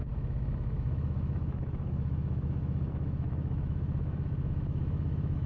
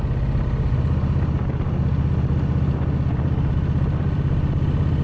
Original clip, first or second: second